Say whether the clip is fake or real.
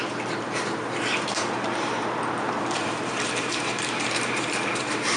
fake